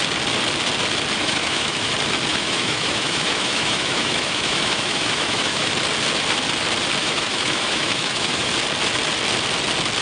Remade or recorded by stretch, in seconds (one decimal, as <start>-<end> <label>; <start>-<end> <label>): 0.0-1.2 recorded; 1.2-1.9 remade; 1.9-2.3 recorded; 2.3-5.7 remade; 5.7-7.0 recorded; 7.0-8.5 remade; 8.5-10.0 recorded